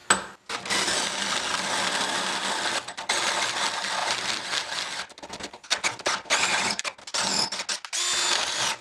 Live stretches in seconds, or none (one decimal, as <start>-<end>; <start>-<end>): 0.0-6.5; 7.0-8.8